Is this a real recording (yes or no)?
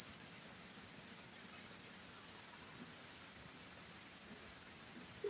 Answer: yes